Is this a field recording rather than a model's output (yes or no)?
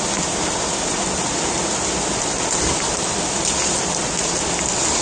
yes